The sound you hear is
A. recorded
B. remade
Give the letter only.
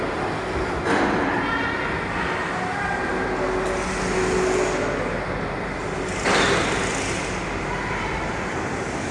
A